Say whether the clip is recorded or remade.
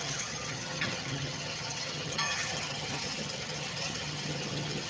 remade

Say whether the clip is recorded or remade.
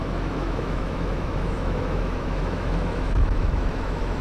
remade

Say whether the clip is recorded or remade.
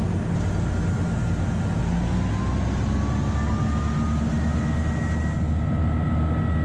recorded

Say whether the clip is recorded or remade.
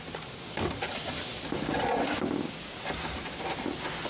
recorded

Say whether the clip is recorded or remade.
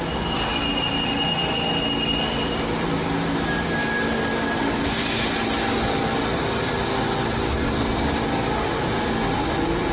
recorded